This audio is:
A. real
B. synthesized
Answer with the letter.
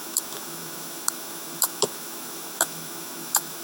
B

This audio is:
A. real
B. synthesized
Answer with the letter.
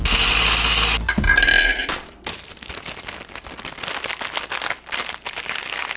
A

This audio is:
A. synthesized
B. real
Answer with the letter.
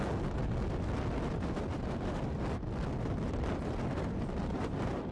B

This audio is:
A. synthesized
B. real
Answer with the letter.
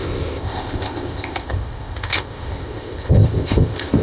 A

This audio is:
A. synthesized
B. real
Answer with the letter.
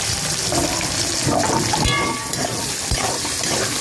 B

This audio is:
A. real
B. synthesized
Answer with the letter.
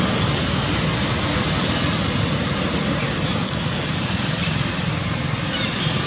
A